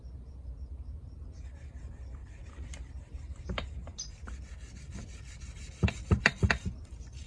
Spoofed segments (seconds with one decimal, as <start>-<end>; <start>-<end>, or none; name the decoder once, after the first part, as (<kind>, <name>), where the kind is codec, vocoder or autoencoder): 2.4-4.0 (vocoder, BigVGAN v2); 4.9-5.6